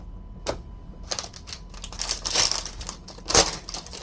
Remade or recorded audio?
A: recorded